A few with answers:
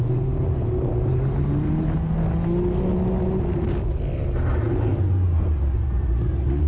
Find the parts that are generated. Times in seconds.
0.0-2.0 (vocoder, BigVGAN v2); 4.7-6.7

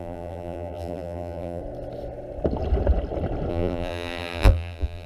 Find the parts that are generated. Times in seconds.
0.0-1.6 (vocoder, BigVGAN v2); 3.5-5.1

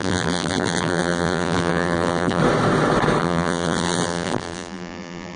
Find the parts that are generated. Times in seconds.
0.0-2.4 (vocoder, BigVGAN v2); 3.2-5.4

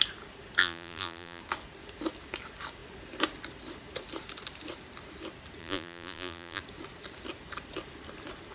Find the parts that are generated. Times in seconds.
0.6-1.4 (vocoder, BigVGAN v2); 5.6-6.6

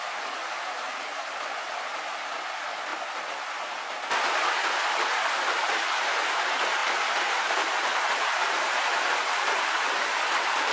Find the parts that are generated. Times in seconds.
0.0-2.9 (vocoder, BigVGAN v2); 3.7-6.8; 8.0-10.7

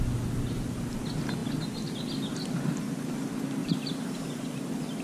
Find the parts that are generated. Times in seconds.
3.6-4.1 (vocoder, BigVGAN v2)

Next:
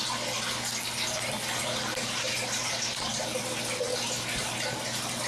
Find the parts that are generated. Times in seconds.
none

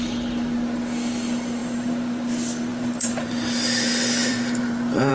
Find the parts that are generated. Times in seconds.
1.6-2.3 (vocoder, BigVGAN v2); 2.7-3.3; 4.2-5.1